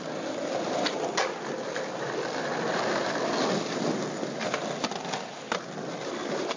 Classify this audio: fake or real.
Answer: real